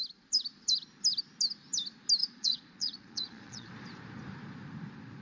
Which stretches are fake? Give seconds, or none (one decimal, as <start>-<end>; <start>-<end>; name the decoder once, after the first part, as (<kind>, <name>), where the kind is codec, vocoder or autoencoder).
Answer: 2.2-3.7 (vocoder, Vocos)